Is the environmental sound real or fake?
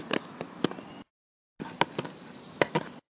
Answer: real